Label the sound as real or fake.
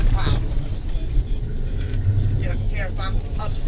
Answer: fake